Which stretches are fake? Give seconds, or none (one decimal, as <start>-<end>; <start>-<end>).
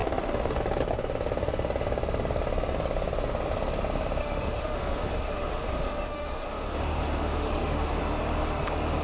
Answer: 0.0-0.6; 4.2-8.0